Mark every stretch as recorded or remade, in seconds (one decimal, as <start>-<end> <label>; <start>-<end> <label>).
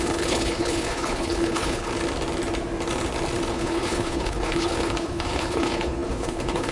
0.0-1.9 remade; 1.9-3.5 recorded; 3.5-6.7 remade